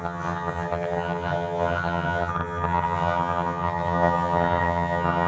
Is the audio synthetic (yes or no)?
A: yes